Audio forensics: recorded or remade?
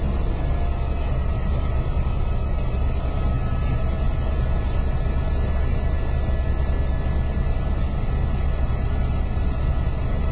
recorded